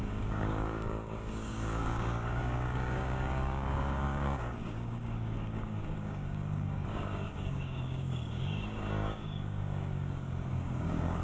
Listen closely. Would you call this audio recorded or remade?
remade